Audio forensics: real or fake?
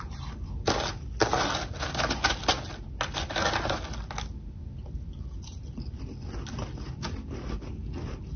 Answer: real